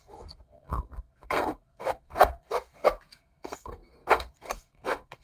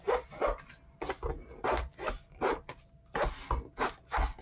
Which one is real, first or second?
second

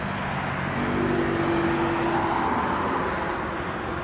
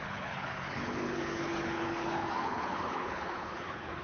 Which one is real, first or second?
first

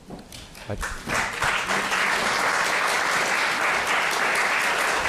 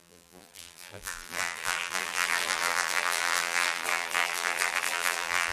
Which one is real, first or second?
first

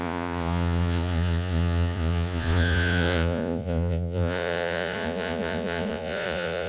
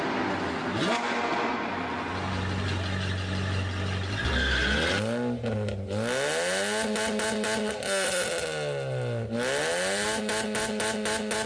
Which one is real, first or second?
second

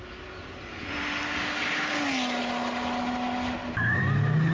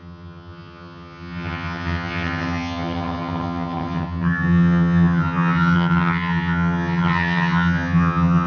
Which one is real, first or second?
first